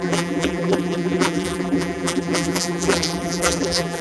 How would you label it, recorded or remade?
remade